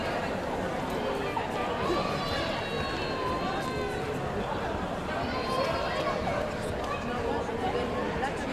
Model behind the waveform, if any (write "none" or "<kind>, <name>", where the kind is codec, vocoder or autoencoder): none